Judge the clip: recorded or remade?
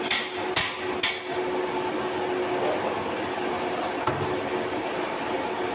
recorded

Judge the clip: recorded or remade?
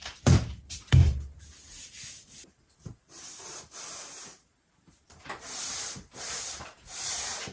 remade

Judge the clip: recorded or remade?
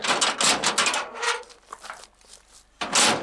recorded